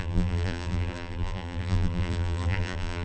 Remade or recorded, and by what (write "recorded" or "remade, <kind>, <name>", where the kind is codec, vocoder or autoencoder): remade, vocoder, BigVGAN v2